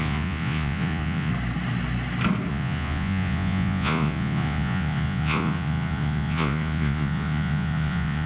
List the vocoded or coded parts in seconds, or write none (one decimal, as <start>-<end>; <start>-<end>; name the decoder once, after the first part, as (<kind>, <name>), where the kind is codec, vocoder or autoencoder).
0.0-1.3 (vocoder, Vocos); 2.5-8.3